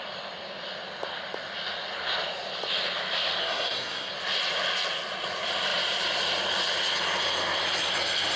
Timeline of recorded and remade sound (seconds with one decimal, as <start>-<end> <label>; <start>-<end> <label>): 0.0-3.4 recorded; 3.4-4.1 remade; 4.1-8.4 recorded